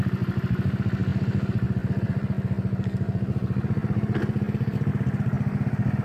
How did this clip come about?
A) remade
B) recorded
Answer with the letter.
B